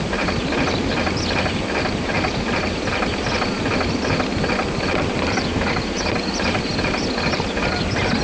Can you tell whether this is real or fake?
real